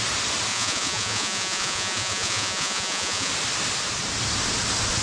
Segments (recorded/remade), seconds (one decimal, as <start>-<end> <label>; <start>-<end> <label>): 0.0-0.5 recorded; 0.5-3.3 remade; 3.3-5.0 recorded